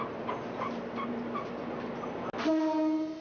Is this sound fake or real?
real